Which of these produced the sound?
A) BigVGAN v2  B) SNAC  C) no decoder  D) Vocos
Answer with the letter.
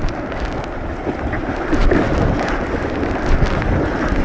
C